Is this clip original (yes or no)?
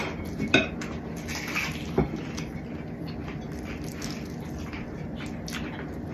yes